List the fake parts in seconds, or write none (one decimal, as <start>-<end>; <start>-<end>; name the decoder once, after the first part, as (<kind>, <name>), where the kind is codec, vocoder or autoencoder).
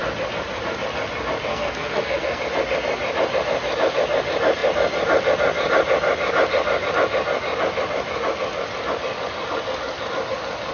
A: 1.5-2.4 (codec, SNAC)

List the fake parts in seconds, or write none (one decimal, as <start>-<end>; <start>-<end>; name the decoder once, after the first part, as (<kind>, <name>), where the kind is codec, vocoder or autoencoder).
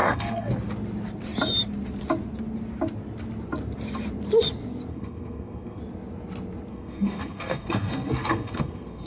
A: 0.0-0.5 (codec, SNAC); 4.9-5.8; 6.7-9.1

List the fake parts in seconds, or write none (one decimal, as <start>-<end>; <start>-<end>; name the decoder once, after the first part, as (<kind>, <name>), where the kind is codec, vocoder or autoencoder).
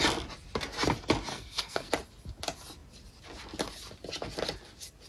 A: 1.3-1.9 (codec, SNAC)